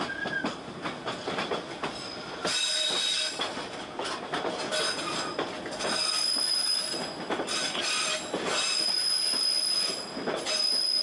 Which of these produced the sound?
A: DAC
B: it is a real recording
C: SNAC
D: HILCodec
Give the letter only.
B